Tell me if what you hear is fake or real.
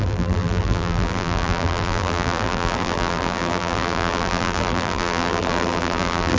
fake